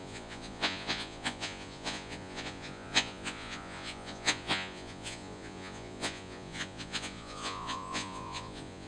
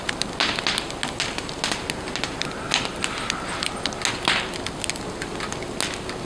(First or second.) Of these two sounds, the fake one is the first